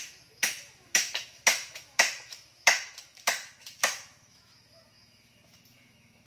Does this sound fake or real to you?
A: fake